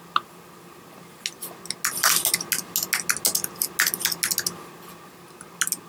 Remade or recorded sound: recorded